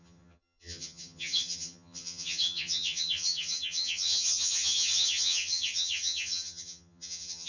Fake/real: fake